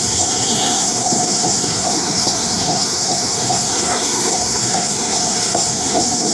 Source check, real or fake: fake